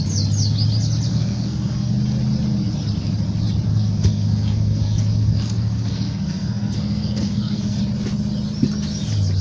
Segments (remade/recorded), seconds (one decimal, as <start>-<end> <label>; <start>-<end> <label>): 0.0-1.1 recorded; 1.1-1.9 remade; 1.9-3.7 recorded; 3.7-7.8 remade; 7.8-9.4 recorded